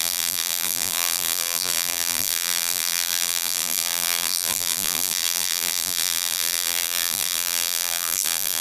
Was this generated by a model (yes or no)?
yes